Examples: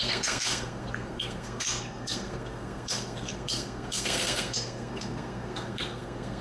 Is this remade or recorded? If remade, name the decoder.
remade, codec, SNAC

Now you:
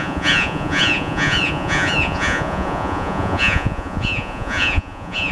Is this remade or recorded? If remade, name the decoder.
remade, vocoder, Vocos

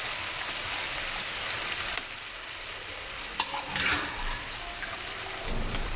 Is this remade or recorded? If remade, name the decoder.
recorded